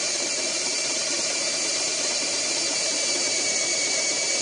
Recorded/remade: remade